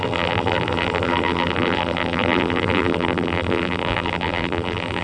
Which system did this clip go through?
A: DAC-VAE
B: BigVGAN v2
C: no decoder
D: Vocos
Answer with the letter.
B